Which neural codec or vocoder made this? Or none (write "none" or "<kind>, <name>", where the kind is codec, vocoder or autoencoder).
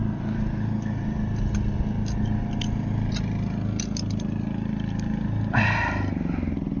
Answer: none